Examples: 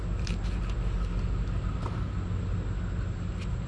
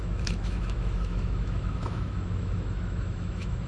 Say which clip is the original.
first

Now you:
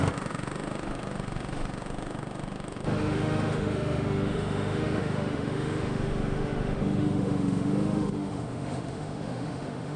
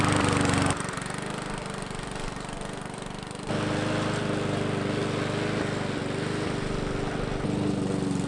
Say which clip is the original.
second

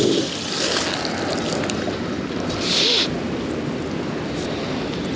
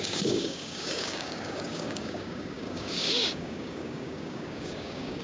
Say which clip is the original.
first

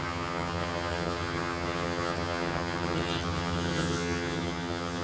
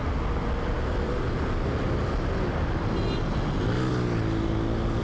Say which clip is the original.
second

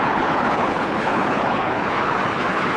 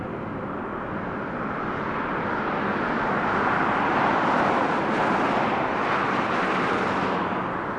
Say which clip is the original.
second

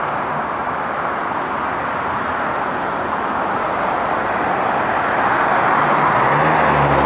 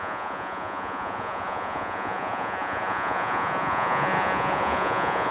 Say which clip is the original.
first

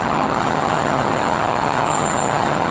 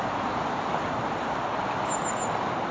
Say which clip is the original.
second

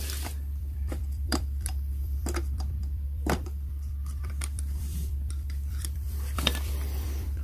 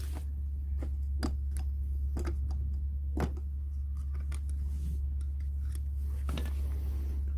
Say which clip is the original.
second